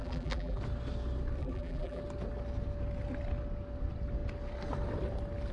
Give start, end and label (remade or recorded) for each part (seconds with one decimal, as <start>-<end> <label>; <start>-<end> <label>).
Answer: 0.0-0.6 remade; 0.6-1.4 recorded; 1.4-2.0 remade; 2.0-5.5 recorded